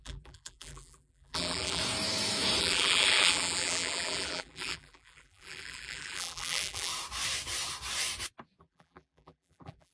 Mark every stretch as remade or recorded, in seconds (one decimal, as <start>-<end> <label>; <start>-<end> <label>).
0.0-1.8 remade; 1.8-2.6 recorded; 2.6-6.9 remade; 6.9-8.6 recorded; 8.6-9.9 remade